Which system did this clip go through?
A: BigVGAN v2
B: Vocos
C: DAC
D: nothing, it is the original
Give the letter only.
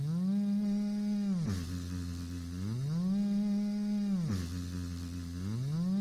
D